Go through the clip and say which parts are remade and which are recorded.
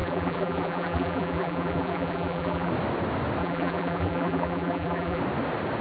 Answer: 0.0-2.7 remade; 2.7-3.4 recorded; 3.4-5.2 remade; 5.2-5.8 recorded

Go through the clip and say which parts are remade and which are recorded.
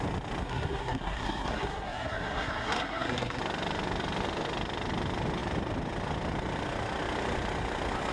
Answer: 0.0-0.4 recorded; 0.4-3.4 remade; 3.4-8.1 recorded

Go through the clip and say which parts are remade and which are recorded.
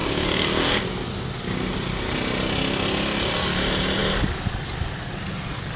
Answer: 0.0-0.8 remade; 0.8-5.8 recorded